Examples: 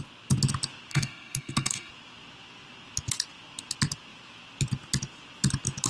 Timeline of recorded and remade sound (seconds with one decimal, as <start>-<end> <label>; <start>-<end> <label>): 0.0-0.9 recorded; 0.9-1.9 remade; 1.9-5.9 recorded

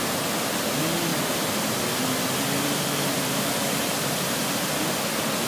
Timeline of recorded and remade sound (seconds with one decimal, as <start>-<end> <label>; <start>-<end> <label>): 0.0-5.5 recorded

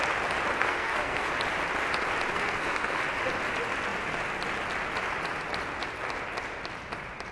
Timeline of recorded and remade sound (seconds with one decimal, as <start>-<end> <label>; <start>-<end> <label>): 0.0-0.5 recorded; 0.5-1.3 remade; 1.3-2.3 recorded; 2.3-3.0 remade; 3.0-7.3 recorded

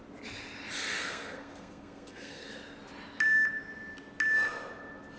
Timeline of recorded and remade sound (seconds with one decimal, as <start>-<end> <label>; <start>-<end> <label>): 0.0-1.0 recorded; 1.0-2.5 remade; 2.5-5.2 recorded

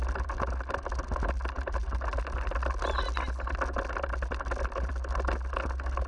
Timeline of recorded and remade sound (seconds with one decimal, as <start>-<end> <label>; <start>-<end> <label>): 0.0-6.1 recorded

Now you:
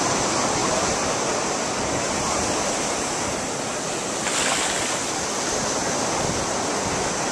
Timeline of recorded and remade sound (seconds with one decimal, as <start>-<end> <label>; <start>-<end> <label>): 0.0-7.3 recorded